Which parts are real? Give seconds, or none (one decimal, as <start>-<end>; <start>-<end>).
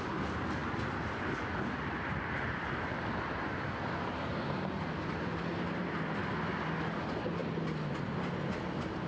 0.0-9.1